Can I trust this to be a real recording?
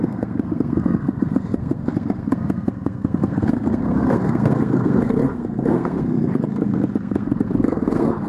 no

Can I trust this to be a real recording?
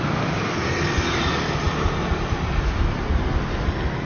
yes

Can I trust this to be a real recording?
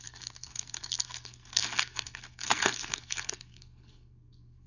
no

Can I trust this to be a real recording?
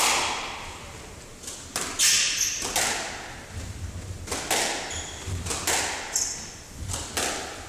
yes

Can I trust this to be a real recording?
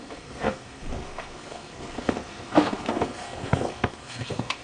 no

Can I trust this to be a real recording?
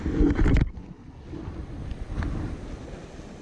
yes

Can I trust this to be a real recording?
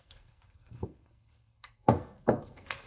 no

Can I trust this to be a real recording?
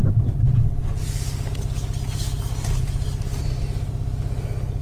yes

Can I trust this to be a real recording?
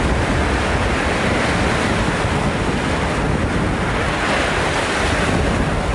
yes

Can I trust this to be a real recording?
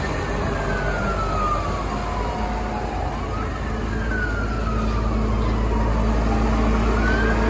yes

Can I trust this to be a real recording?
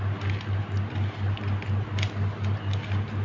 yes